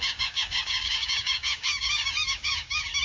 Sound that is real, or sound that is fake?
fake